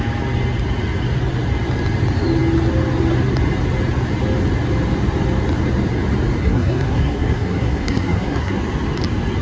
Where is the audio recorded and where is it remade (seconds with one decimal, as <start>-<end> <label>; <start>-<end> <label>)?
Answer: 0.0-6.4 recorded; 6.4-8.6 remade; 8.6-9.4 recorded